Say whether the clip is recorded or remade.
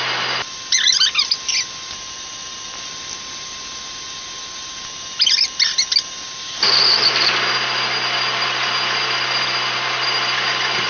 recorded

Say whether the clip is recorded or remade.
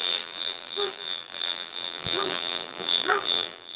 remade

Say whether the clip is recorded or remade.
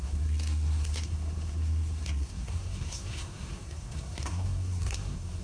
remade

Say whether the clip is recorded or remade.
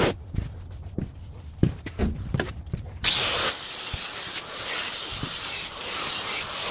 recorded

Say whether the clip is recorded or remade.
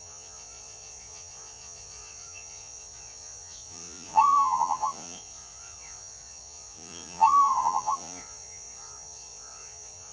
remade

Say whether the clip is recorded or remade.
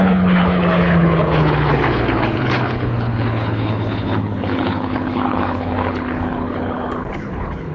remade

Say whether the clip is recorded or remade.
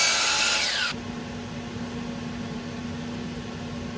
recorded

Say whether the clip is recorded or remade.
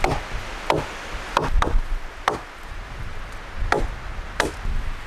recorded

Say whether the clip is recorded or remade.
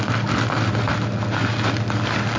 recorded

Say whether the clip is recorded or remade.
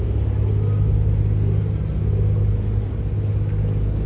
recorded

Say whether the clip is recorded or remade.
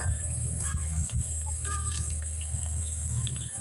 remade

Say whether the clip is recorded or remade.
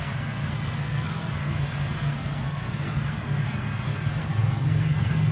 remade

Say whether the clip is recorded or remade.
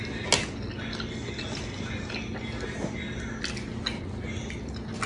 recorded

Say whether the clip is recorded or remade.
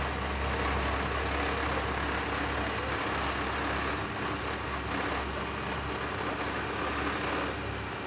recorded